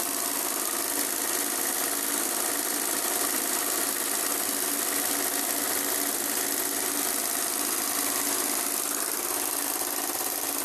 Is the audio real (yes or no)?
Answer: yes